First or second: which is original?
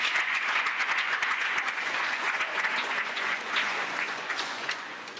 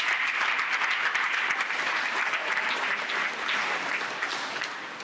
second